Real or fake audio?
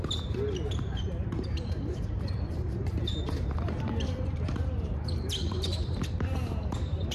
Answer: fake